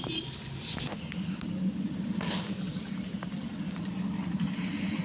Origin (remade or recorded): recorded